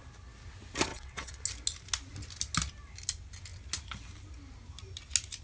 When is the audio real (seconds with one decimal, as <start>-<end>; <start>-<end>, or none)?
0.0-0.9; 1.4-5.4